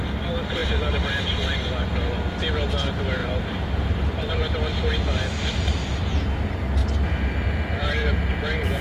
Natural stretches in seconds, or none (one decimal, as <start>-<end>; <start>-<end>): 0.0-3.2; 4.3-6.8; 8.3-8.8